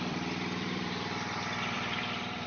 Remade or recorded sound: remade